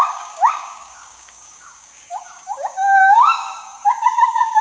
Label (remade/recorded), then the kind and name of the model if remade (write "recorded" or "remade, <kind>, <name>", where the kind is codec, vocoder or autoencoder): remade, codec, DAC